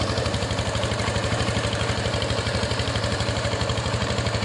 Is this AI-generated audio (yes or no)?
yes